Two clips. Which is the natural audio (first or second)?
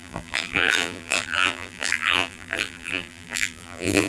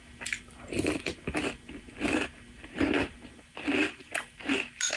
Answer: second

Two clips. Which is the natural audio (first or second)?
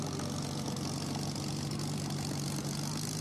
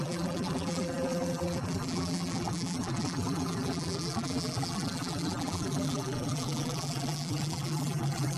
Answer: first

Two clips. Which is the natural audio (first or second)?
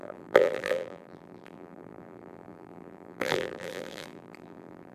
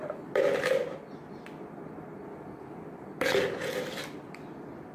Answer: second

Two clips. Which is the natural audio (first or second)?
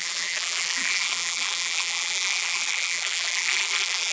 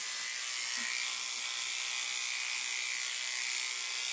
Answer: second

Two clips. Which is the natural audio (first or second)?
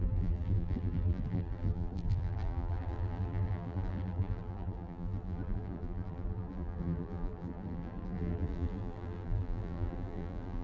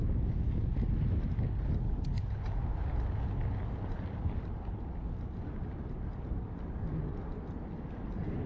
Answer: second